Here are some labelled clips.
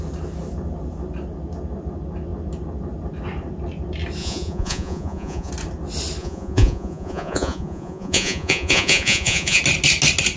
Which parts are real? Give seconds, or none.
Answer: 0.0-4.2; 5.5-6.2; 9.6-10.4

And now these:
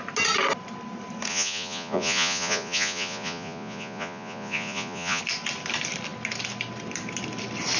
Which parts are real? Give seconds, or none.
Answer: 0.0-1.3; 5.2-7.8